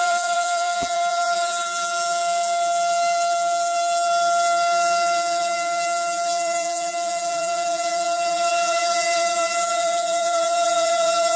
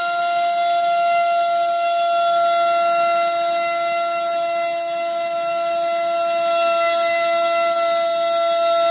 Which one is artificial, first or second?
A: first